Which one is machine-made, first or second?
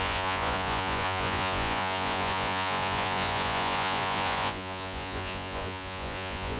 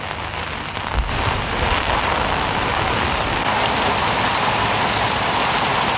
first